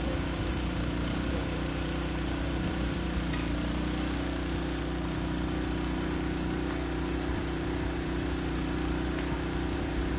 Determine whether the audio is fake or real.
real